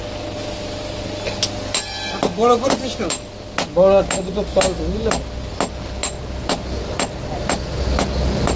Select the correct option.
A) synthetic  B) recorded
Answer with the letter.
B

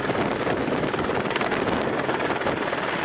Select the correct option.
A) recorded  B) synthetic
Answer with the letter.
A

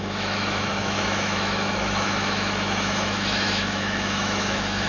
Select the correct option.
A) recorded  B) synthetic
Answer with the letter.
B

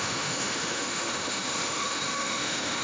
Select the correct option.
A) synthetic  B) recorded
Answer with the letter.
A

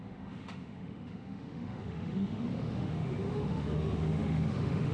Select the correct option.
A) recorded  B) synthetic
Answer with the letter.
B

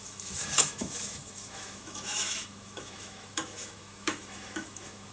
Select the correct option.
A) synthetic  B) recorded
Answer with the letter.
A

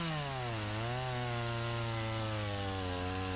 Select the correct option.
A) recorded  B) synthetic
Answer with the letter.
A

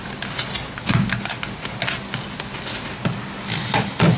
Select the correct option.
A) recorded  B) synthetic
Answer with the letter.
A